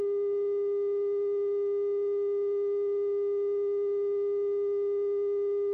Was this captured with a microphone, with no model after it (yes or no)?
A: yes